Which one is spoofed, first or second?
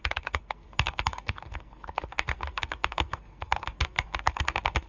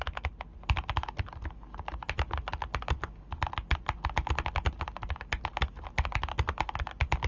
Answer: first